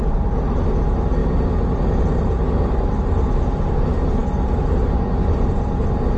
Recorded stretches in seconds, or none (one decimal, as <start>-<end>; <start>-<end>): 0.0-6.2